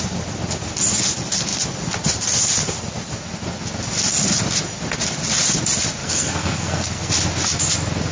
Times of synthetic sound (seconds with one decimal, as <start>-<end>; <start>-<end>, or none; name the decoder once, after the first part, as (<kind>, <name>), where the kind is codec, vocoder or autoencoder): 6.0-7.1 (codec, SNAC)